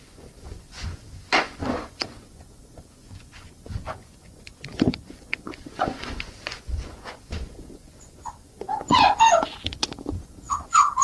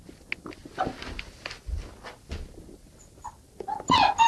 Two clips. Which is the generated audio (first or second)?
first